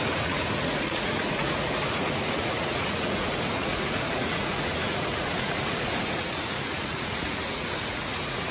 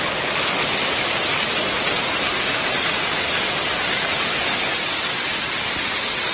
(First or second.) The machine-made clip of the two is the first